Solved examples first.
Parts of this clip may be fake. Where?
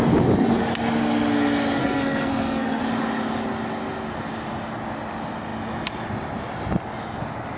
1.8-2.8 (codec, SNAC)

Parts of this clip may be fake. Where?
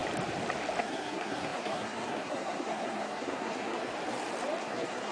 0.8-3.9 (codec, SNAC); 4.6-5.1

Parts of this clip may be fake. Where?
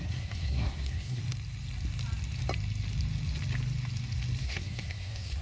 0.0-1.2 (codec, SNAC); 4.4-5.4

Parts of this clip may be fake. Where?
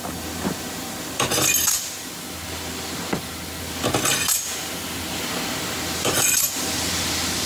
none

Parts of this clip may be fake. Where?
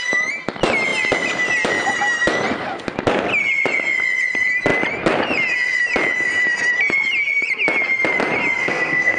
8.6-9.2 (codec, SNAC)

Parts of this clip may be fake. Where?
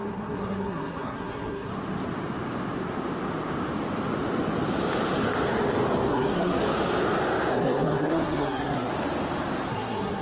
0.0-1.7 (codec, SNAC); 6.1-6.6; 7.5-8.9; 9.7-10.2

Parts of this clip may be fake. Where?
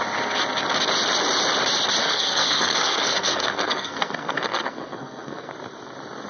2.0-5.5 (codec, SNAC)